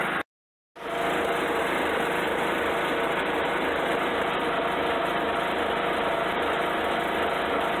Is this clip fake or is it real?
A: real